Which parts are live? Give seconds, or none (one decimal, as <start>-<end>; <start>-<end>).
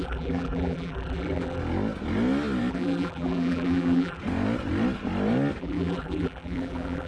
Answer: 1.6-2.7; 4.2-5.6